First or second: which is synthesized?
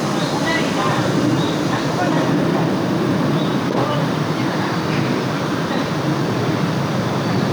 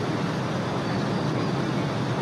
first